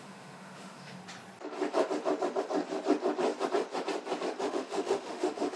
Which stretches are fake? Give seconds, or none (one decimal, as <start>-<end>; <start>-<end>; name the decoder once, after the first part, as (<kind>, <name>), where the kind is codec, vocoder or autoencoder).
0.0-1.0 (autoencoder, DAC-VAE); 4.4-5.6